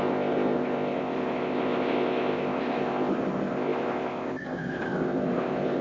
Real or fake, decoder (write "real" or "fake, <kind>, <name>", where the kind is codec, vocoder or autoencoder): fake, codec, ZipCodec